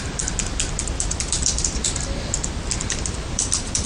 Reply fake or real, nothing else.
fake